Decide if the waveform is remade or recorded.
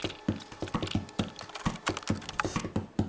recorded